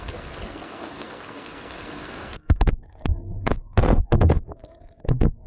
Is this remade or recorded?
remade